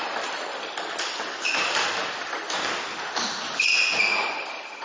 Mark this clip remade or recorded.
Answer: recorded